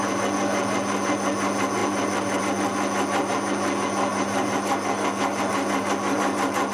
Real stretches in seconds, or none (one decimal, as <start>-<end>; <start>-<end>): 0.0-6.7